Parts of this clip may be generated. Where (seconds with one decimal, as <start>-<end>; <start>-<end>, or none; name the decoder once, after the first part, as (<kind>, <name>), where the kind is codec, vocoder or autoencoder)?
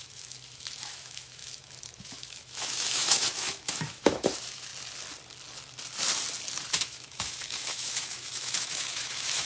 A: 0.0-4.7 (autoencoder, DAC-VAE); 6.7-9.5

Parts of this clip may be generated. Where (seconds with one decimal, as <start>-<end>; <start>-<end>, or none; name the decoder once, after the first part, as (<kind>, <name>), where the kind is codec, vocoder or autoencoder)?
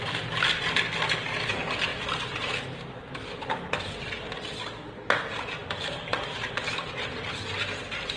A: none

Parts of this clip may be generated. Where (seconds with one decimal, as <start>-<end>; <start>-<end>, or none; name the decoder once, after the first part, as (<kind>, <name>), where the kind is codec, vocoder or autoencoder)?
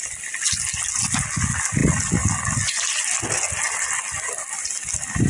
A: none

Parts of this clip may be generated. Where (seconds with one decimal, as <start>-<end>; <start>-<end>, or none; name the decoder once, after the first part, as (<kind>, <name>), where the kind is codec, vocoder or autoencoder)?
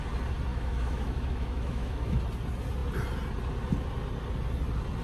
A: 0.5-2.2 (autoencoder, DAC-VAE)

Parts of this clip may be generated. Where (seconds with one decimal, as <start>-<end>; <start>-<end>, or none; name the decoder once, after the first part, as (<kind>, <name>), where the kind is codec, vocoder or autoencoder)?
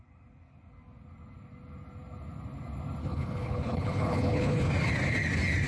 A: 3.0-4.7 (codec, HILCodec)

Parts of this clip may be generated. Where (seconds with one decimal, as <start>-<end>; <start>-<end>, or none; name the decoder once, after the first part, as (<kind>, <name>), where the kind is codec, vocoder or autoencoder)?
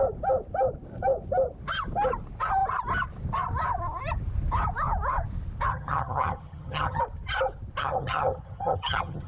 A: 5.7-7.0 (vocoder, HiFi-GAN); 7.8-9.3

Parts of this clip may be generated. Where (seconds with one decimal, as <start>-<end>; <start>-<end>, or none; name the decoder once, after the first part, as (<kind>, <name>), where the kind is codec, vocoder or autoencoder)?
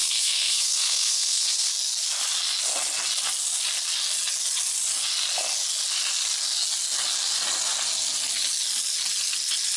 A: 0.0-1.7 (codec, SNAC)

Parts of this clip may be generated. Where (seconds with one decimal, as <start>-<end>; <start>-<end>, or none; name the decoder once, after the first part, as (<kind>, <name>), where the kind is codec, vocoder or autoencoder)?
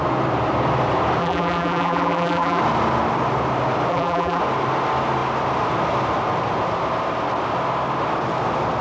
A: 1.2-2.6 (vocoder, BigVGAN v2); 3.9-4.4